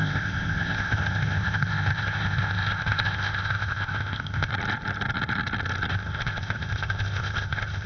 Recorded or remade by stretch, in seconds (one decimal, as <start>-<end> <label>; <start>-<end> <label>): 0.0-4.5 remade; 4.5-5.9 recorded; 5.9-7.9 remade